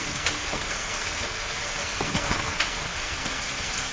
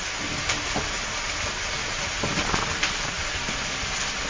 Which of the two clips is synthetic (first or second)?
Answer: first